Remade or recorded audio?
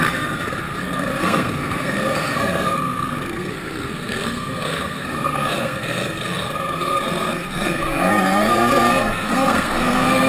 remade